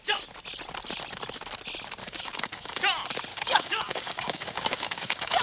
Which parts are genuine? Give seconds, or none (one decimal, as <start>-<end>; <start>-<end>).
0.0-2.0; 2.8-3.3